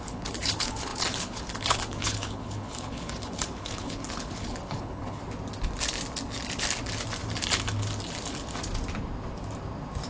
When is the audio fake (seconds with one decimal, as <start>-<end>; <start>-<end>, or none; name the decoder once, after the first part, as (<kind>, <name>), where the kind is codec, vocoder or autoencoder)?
0.0-5.2 (codec, HILCodec)